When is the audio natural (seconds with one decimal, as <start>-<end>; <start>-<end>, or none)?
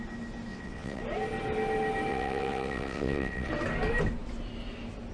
0.0-0.5; 1.0-2.1; 3.5-5.1